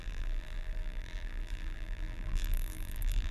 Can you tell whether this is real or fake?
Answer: fake